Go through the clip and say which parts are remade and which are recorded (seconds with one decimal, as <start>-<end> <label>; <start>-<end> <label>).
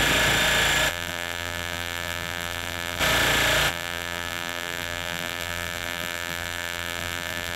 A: 0.0-0.9 recorded; 0.9-3.0 remade; 3.0-3.7 recorded; 3.7-7.6 remade